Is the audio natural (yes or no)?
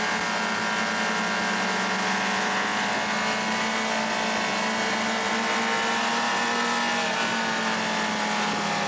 yes